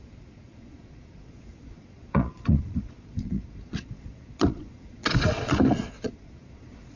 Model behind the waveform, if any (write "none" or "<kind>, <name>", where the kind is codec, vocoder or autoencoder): vocoder, Vocos